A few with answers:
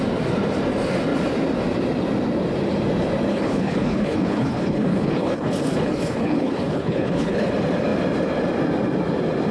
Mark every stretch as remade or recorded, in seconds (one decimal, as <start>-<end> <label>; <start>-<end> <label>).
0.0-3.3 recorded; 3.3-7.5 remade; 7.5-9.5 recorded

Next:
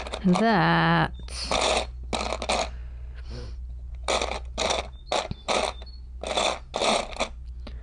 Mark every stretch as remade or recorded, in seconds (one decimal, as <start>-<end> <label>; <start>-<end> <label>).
0.0-2.8 recorded; 2.8-4.8 remade; 4.8-7.8 recorded

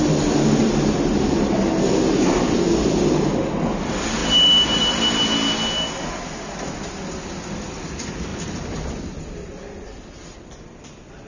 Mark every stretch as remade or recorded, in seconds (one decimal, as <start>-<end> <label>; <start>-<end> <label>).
0.0-0.6 recorded; 0.6-1.2 remade; 1.2-4.2 recorded; 4.2-5.2 remade; 5.2-11.3 recorded

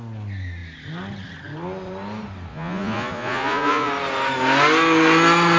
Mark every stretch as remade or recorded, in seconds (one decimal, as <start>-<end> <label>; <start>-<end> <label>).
0.0-2.5 recorded; 2.5-3.9 remade; 3.9-5.6 recorded

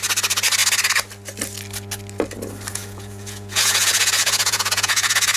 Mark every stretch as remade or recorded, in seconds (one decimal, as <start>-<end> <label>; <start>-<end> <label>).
0.0-2.7 recorded; 2.7-5.4 remade